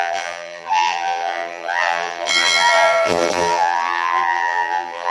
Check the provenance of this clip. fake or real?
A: fake